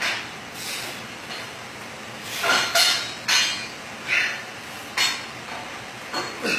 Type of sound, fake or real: real